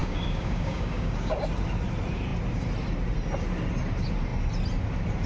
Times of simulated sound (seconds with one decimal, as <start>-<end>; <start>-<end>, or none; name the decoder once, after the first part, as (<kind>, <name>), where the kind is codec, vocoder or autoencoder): 0.0-1.4 (codec, DAC)